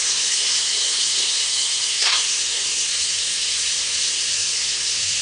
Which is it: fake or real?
fake